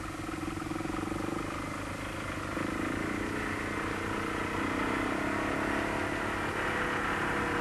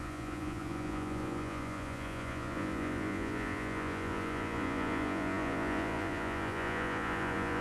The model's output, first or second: second